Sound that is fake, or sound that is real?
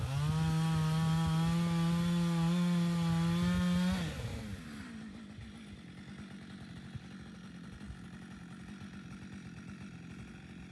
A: real